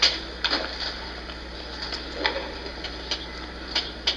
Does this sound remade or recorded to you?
recorded